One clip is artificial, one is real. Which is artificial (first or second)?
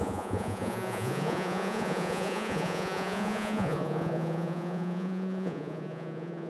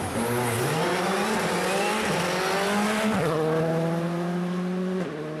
first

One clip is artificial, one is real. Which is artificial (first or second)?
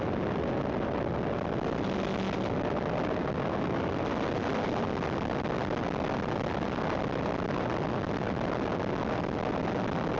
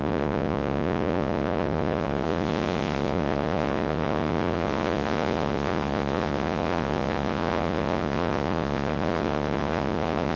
second